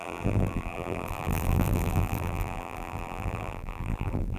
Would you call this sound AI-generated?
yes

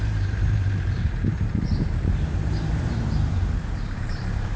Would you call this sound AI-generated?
yes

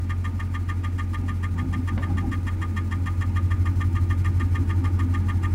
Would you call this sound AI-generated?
no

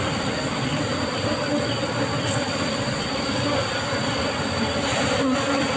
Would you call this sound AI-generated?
yes